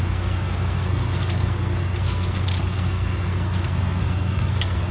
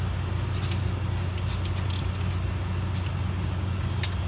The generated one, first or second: first